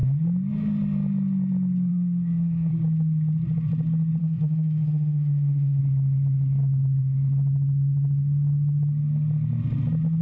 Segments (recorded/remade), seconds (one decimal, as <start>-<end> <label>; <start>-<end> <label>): 0.0-1.9 recorded; 1.9-2.7 remade; 2.7-4.2 recorded; 4.2-5.8 remade; 5.8-10.2 recorded